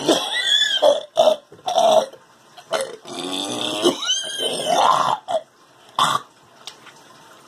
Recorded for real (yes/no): yes